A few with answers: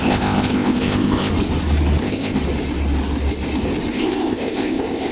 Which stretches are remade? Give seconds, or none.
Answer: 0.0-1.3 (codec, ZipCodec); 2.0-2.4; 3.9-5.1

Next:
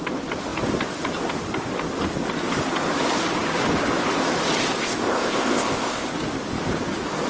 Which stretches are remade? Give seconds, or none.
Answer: 4.8-6.1 (codec, ZipCodec)

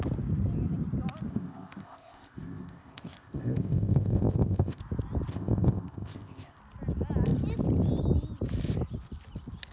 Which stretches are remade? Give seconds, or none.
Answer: 1.3-4.8 (codec, ZipCodec); 5.3-6.6